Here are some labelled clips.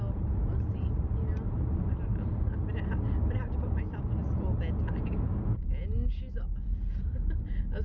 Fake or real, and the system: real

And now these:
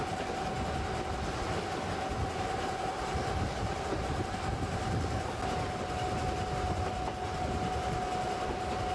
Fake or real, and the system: real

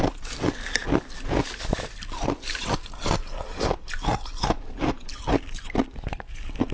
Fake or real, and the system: real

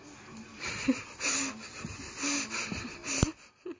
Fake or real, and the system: real